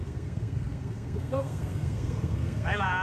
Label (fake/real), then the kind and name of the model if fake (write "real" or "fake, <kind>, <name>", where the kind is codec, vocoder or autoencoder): fake, codec, SNAC